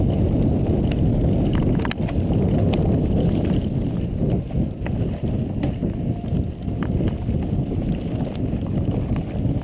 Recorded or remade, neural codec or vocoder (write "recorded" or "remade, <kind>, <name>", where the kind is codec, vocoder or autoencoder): recorded